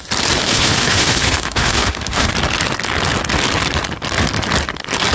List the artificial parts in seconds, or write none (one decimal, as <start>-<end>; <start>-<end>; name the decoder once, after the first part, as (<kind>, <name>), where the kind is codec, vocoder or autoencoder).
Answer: 0.4-2.3 (autoencoder, DAC-VAE)